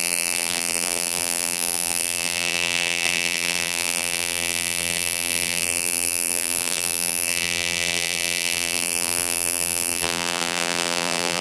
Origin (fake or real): fake